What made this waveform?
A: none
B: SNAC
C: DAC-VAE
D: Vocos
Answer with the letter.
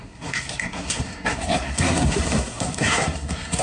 B